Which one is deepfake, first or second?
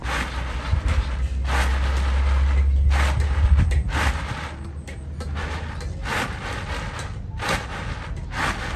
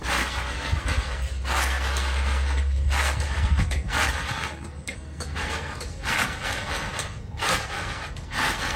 second